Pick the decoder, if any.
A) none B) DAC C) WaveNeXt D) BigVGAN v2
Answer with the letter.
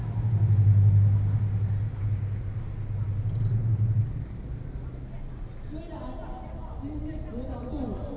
A